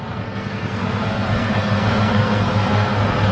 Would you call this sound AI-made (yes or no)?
yes